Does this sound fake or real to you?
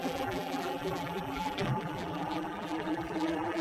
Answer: fake